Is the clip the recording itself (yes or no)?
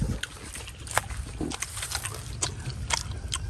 yes